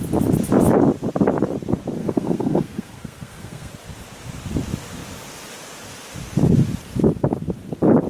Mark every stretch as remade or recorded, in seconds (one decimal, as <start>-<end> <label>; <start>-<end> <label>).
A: 0.0-2.0 recorded; 2.0-3.7 remade; 3.7-8.1 recorded

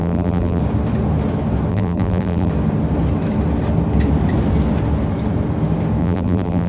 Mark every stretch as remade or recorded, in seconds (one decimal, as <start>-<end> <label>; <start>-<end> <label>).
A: 0.0-0.6 remade; 0.6-1.7 recorded; 1.7-2.5 remade; 2.5-6.0 recorded; 6.0-6.7 remade

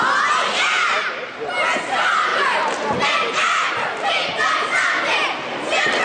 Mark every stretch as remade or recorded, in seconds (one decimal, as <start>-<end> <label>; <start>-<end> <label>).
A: 0.0-2.3 recorded; 2.3-6.0 remade

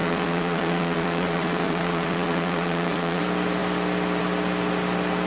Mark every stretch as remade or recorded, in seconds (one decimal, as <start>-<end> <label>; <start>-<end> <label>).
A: 0.0-3.2 remade; 3.2-5.3 recorded

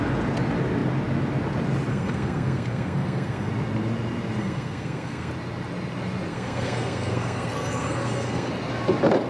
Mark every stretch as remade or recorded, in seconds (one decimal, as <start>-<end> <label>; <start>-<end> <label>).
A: 0.0-1.9 recorded; 1.9-3.5 remade; 3.5-4.4 recorded; 4.4-5.3 remade; 5.3-6.3 recorded; 6.3-8.5 remade; 8.5-9.3 recorded

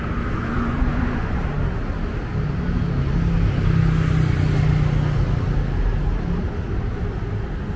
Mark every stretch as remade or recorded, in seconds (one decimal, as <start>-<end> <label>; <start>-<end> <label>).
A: 0.0-0.4 recorded; 0.4-1.4 remade; 1.4-7.8 recorded

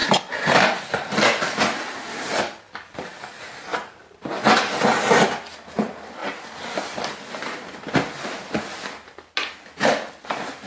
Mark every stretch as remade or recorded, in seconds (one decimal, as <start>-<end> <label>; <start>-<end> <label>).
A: 0.0-3.7 recorded; 3.7-4.6 remade; 4.6-10.7 recorded